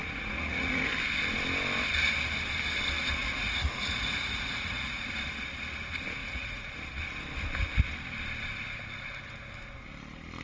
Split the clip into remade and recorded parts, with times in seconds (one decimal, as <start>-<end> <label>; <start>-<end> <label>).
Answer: 0.0-0.9 remade; 0.9-3.2 recorded; 3.2-5.1 remade; 5.1-6.2 recorded; 6.2-6.7 remade; 6.7-10.4 recorded